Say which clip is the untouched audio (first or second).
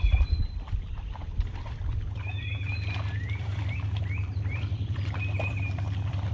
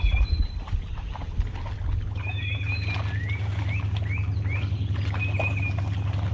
second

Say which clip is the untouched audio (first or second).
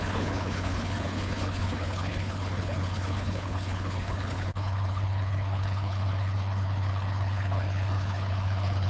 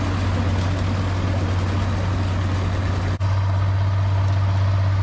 second